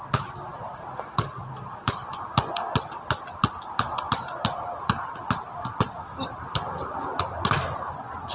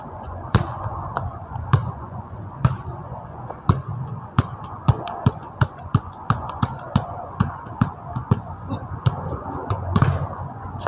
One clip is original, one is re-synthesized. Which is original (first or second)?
first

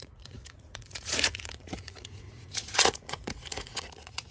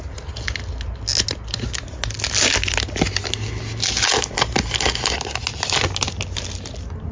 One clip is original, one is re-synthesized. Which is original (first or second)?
second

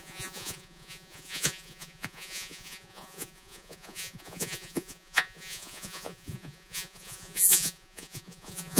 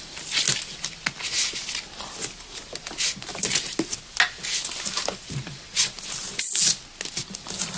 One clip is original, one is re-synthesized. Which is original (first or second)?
second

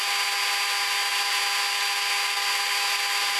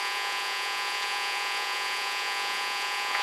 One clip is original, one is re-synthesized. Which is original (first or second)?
first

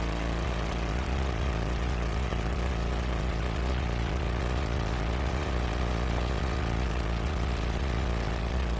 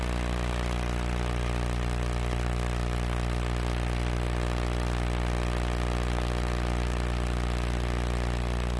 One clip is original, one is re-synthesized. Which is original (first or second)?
second